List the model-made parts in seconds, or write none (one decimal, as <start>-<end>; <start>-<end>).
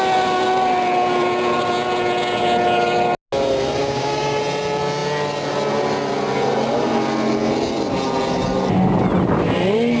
3.8-4.4